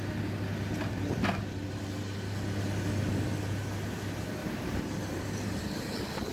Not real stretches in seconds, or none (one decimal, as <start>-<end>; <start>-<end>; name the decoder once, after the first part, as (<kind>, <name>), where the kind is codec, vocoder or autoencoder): 4.4-5.6 (vocoder, BigVGAN v2)